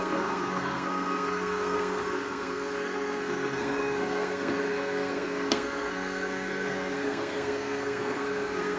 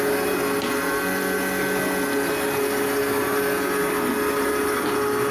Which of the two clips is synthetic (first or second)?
first